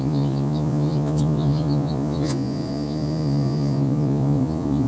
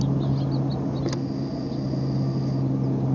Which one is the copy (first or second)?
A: first